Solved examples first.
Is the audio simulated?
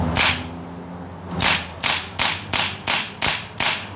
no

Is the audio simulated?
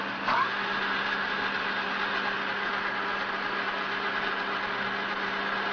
no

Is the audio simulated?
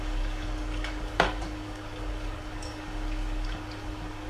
yes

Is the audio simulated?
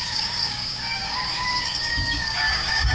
yes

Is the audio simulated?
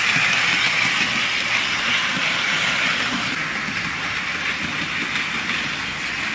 no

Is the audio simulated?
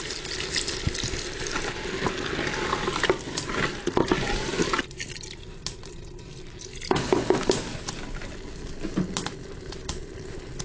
no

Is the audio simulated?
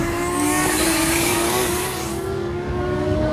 yes